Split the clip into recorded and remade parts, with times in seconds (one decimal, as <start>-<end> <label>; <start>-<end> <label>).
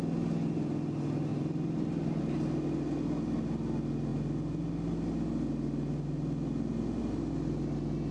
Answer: 0.0-1.3 recorded; 1.3-2.2 remade; 2.2-8.1 recorded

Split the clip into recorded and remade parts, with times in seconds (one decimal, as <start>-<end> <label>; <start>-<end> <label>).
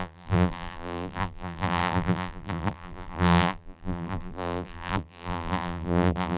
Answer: 0.0-6.4 remade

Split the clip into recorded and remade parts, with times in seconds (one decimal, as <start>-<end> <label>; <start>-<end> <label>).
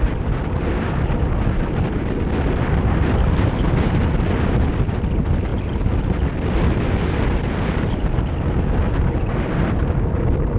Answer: 0.0-10.6 recorded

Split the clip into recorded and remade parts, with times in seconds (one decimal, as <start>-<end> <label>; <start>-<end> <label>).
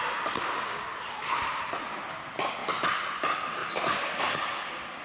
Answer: 0.0-0.9 recorded; 0.9-1.6 remade; 1.6-3.6 recorded; 3.6-4.2 remade; 4.2-5.0 recorded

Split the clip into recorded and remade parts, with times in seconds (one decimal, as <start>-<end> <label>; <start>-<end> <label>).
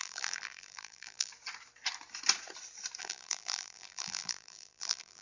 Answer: 0.0-1.3 remade; 1.3-3.0 recorded; 3.0-5.2 remade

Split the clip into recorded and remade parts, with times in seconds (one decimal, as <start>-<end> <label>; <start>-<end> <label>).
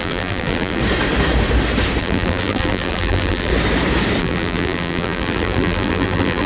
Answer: 0.0-0.8 remade; 0.8-2.0 recorded; 2.0-3.5 remade; 3.5-4.2 recorded; 4.2-6.5 remade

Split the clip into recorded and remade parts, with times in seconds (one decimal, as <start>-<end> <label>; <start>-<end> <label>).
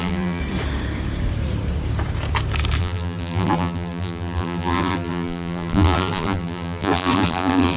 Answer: 0.0-0.4 remade; 0.4-2.8 recorded; 2.8-7.8 remade